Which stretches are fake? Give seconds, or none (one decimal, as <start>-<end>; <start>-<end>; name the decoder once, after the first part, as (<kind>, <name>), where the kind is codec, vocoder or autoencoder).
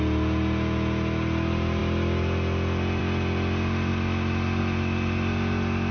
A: none